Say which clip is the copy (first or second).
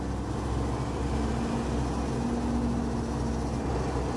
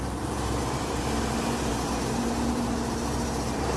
second